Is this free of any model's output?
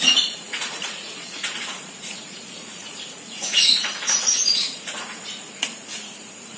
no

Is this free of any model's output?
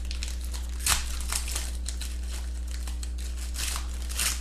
yes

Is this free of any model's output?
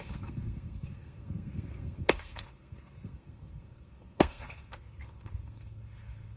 no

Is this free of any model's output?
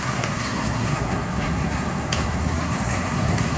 no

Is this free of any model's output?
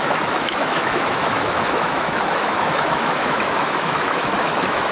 no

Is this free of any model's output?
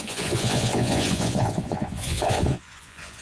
no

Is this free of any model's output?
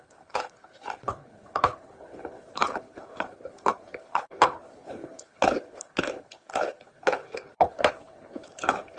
no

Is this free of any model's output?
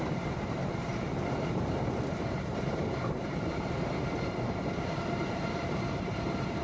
no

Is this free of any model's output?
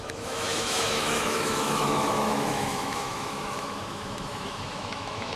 no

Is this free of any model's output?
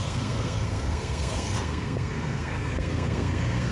no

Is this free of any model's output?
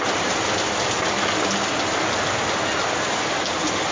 yes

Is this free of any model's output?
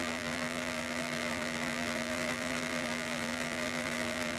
no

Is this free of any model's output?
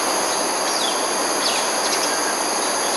yes